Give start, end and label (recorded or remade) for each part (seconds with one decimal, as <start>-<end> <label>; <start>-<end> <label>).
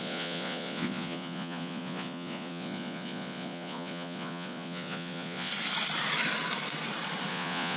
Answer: 0.0-5.5 remade; 5.5-7.3 recorded; 7.3-7.8 remade